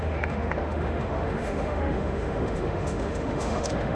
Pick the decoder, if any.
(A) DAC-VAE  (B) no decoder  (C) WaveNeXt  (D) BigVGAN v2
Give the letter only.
A